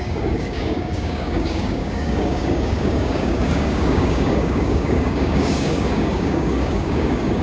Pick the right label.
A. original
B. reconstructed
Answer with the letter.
B